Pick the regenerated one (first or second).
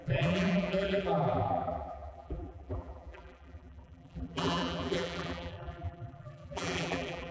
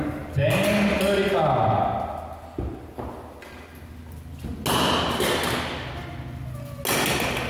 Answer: first